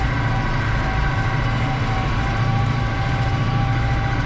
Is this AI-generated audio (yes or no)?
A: yes